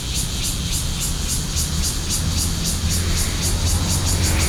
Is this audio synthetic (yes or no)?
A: no